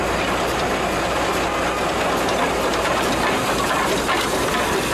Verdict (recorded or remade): recorded